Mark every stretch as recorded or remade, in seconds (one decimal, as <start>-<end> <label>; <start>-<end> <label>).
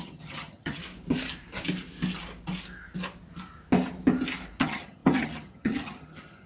0.0-0.8 remade; 0.8-4.6 recorded; 4.6-6.5 remade